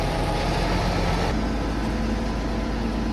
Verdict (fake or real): real